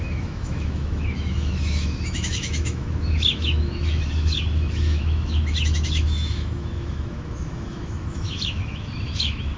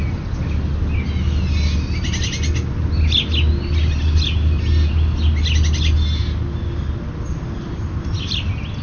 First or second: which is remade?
first